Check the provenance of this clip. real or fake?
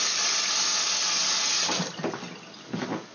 real